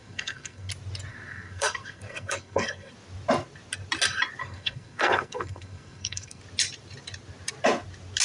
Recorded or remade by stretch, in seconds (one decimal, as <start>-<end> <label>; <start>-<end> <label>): 0.0-0.7 remade; 0.7-1.1 recorded; 1.1-2.9 remade; 2.9-4.4 recorded; 4.4-6.4 remade; 6.4-8.2 recorded